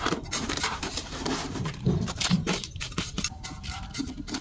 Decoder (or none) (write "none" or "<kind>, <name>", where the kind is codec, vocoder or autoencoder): vocoder, BigVGAN v2